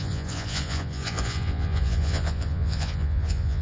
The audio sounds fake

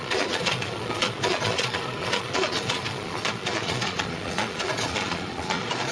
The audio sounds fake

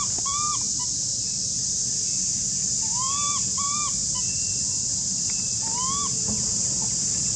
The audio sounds real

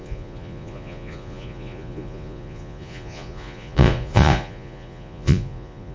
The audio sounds fake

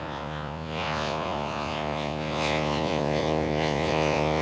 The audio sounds fake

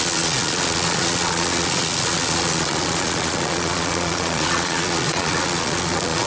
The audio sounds fake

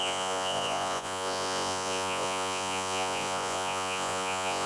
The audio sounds fake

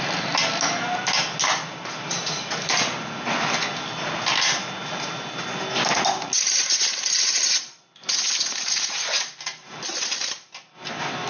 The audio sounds real